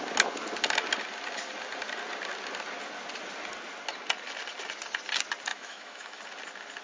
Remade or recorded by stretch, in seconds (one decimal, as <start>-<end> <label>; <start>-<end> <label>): 0.0-5.5 recorded; 5.5-6.2 remade; 6.2-6.8 recorded